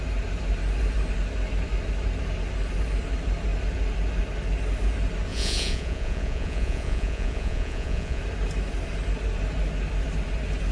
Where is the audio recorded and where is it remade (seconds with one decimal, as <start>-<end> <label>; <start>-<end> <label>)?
0.0-5.3 recorded; 5.3-8.2 remade; 8.2-10.7 recorded